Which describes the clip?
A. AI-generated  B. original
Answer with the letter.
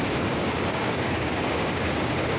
A